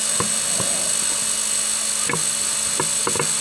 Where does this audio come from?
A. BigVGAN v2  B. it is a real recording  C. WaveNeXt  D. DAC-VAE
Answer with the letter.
B